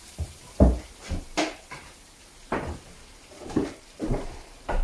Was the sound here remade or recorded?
remade